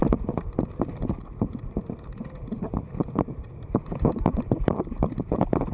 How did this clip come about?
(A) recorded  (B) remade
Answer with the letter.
A